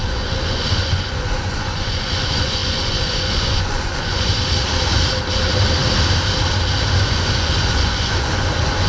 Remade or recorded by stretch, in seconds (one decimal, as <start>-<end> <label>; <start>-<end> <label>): 0.0-4.4 remade; 4.4-7.0 recorded; 7.0-8.9 remade